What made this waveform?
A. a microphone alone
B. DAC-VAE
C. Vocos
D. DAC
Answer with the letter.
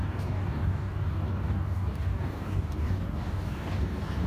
D